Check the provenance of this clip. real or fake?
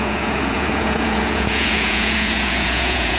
fake